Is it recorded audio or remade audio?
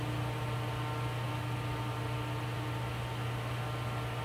recorded